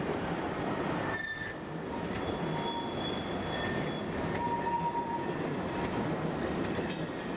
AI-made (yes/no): no